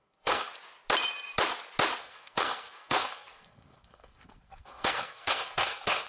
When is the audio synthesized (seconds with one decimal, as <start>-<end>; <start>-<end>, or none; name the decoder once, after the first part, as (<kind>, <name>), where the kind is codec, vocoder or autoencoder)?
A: 0.0-0.5 (codec, SNAC); 2.0-6.1